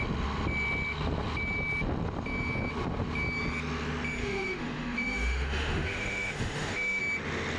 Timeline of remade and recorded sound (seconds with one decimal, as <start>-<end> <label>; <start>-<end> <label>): 0.0-4.2 recorded; 4.2-7.0 remade; 7.0-7.6 recorded